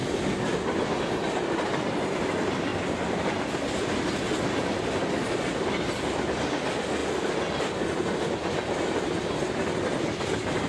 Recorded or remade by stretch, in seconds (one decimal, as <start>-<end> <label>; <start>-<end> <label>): 0.0-10.7 recorded